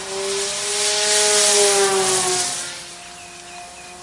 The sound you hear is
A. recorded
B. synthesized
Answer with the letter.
A